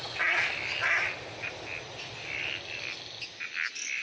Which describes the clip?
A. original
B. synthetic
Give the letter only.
A